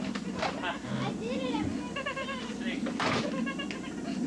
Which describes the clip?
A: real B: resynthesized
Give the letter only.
A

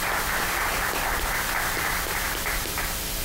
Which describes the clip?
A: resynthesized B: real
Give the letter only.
B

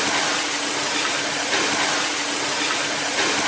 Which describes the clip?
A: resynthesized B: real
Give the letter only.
B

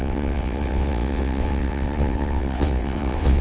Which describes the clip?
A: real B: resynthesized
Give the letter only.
B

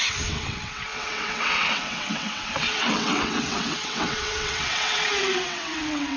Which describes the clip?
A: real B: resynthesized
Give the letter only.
B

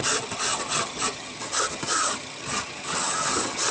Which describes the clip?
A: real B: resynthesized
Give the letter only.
B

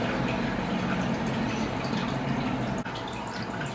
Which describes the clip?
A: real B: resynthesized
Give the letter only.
A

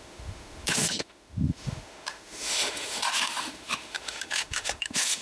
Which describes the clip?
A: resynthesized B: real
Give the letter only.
A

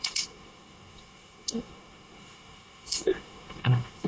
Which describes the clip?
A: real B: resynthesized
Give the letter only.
B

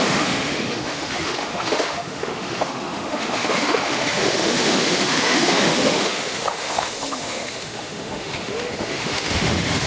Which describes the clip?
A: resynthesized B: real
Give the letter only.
A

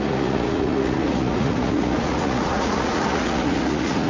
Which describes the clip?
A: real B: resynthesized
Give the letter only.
B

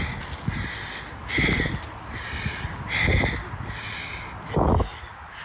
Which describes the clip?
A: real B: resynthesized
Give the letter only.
A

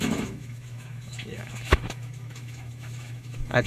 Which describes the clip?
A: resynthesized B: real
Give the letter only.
A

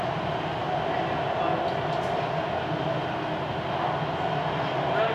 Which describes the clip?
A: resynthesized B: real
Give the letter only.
B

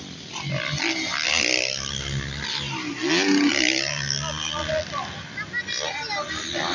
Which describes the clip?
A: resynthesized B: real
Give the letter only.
B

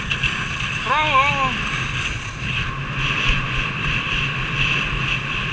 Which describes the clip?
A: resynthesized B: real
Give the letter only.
B